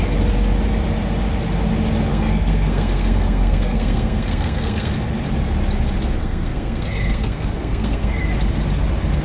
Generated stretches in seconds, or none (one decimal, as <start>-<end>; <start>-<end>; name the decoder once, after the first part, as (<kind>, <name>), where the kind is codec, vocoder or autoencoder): 2.1-4.9 (codec, SNAC); 6.2-8.2

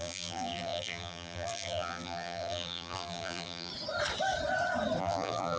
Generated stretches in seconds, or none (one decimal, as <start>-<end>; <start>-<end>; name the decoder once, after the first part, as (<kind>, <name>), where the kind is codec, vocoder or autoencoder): 0.0-3.7 (vocoder, BigVGAN v2); 5.0-5.6

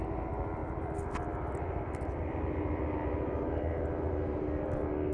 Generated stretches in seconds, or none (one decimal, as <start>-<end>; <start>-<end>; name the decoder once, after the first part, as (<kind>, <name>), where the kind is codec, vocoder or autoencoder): none

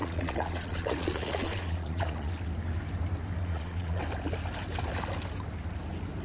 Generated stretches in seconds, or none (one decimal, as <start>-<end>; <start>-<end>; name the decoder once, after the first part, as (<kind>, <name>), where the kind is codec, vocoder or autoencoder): 0.0-2.3 (vocoder, Vocos); 3.4-4.0

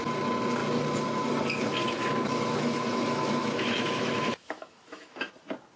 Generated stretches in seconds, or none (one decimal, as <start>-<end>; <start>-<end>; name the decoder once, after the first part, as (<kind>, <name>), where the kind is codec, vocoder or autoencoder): 1.8-5.3 (autoencoder, DAC-VAE)

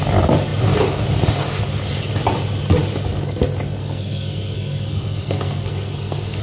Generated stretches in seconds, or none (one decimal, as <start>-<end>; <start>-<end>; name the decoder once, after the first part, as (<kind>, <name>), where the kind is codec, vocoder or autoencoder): 3.8-6.4 (codec, SNAC)

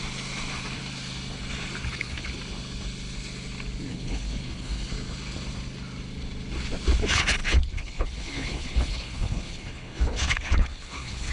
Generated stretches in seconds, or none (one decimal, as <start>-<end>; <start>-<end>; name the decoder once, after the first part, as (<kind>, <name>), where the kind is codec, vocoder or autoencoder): 1.8-2.3 (codec, HILCodec); 3.9-4.9; 7.4-11.3

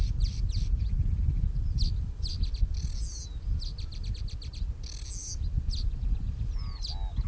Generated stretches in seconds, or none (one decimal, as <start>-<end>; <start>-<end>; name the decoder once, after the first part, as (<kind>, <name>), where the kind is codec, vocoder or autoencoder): none